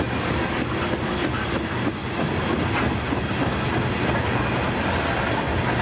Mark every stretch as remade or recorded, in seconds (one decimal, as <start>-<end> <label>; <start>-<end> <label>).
0.0-5.8 recorded